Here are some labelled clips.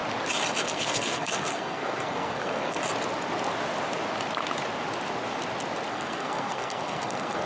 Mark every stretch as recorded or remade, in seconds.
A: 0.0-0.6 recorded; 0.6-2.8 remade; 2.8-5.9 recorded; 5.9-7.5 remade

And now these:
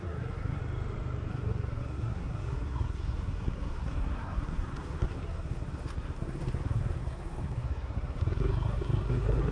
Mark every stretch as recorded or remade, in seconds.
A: 0.0-0.6 remade; 0.6-1.3 recorded; 1.3-9.5 remade

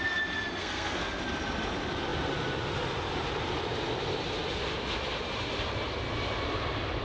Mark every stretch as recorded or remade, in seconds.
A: 0.0-0.6 recorded; 0.6-1.2 remade; 1.2-7.0 recorded

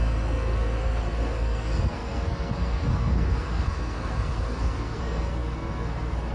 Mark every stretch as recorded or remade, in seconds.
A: 0.0-6.3 remade

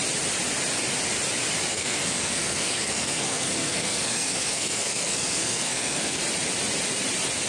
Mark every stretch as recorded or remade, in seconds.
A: 0.0-1.7 recorded; 1.7-6.2 remade; 6.2-7.5 recorded

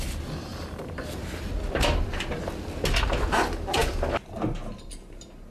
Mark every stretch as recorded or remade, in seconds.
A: 0.0-5.5 recorded

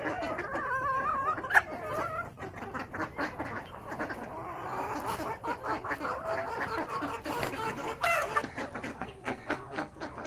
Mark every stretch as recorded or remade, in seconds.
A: 0.0-7.4 recorded; 7.4-8.5 remade; 8.5-8.9 recorded; 8.9-10.3 remade

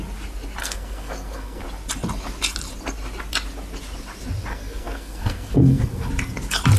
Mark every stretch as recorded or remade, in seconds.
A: 0.0-0.6 recorded; 0.6-1.6 remade; 1.6-4.5 recorded; 4.5-6.1 remade; 6.1-6.8 recorded